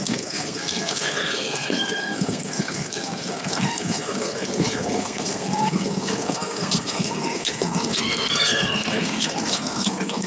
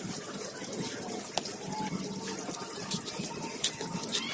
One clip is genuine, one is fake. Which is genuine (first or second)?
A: second